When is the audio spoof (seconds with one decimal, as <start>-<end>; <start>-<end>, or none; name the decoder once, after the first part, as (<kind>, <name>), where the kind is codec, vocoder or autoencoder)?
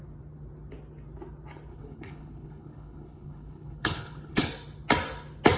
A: 1.7-4.5 (codec, HILCodec)